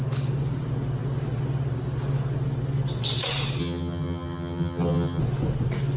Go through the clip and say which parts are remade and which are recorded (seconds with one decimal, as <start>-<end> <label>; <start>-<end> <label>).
0.0-3.6 recorded; 3.6-5.2 remade; 5.2-6.0 recorded